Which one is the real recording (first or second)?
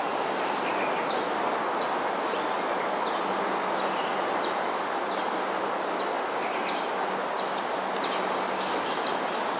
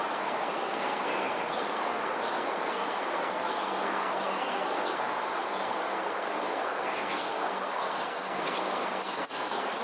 first